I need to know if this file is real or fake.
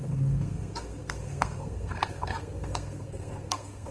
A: fake